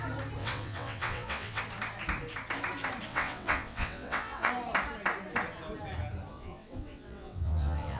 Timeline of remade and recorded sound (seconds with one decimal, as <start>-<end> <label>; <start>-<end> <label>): 0.0-0.4 recorded; 0.4-1.6 remade; 1.6-3.1 recorded; 3.1-4.5 remade; 4.5-6.3 recorded; 6.3-8.0 remade